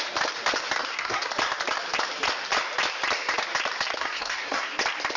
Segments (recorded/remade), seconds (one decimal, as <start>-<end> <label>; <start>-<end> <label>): 0.0-0.8 recorded; 0.8-1.3 remade; 1.3-4.0 recorded; 4.0-4.7 remade; 4.7-5.2 recorded